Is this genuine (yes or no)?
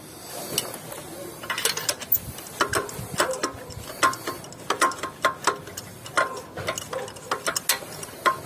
yes